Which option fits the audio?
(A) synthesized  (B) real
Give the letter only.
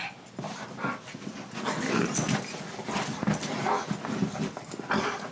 B